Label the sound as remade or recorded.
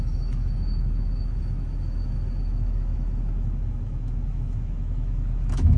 remade